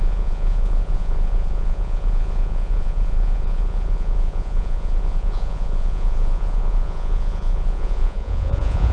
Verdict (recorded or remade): remade